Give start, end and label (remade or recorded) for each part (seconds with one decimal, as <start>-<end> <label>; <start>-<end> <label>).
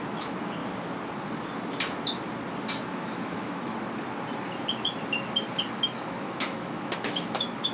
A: 0.0-0.6 remade; 0.6-2.9 recorded; 2.9-3.7 remade; 3.7-5.7 recorded; 5.7-7.7 remade